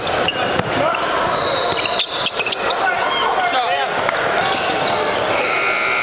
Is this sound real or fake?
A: real